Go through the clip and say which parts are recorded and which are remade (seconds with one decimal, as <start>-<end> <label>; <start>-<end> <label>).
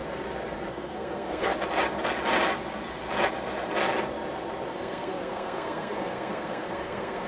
0.0-0.7 recorded; 0.7-1.5 remade; 1.5-4.7 recorded; 4.7-7.3 remade